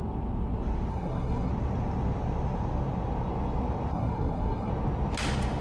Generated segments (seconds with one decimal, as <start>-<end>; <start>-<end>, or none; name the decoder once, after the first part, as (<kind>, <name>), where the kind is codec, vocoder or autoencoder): 0.9-1.5 (codec, SNAC); 3.9-4.7

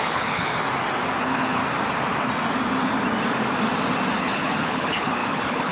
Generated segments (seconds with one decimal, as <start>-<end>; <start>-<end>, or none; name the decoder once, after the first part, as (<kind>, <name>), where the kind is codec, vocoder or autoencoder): 0.0-0.5 (codec, HILCodec); 1.2-1.6; 4.2-5.7